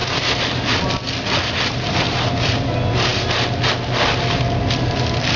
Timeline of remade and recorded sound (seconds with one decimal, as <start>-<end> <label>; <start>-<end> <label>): 0.0-5.4 recorded